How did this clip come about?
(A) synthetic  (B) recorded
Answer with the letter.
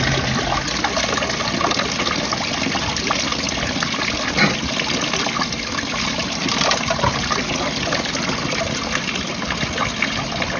B